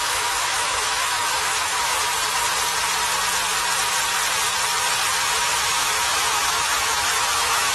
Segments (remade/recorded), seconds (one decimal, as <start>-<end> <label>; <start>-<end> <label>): 0.0-2.0 remade; 2.0-5.3 recorded; 5.3-7.7 remade